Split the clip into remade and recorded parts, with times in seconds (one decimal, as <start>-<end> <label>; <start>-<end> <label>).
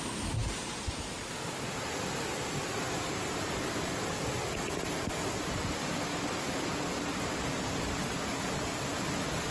0.0-9.5 recorded